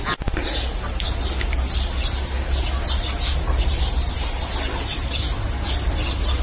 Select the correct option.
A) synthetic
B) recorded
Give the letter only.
B